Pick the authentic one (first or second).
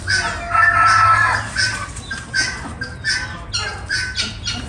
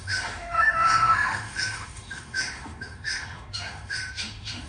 first